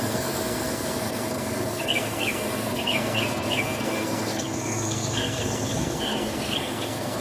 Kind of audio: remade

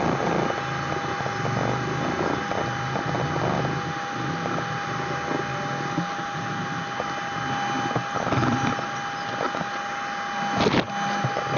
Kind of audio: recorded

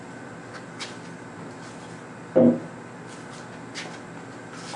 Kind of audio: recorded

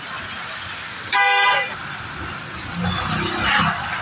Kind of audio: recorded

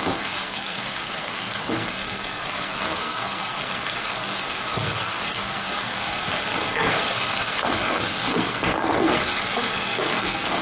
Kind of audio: remade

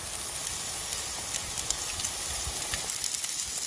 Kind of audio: recorded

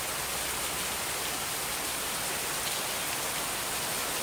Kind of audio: recorded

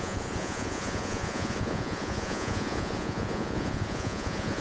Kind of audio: remade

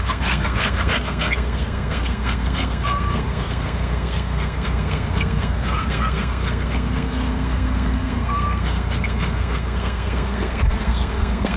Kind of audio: remade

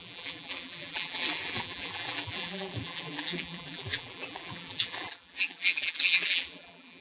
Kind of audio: remade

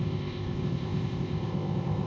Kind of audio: remade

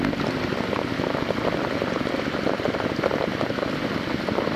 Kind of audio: recorded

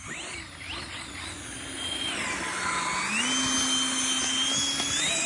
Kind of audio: recorded